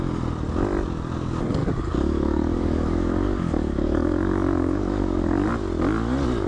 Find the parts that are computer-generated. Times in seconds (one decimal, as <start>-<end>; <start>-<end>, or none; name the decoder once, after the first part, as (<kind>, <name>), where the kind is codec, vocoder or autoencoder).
1.6-5.5 (codec, DAC)